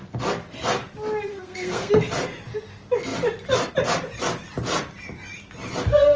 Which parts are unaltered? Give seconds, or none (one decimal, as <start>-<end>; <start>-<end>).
0.0-1.3; 1.9-6.2